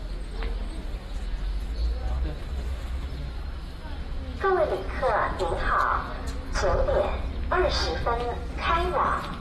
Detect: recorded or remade recorded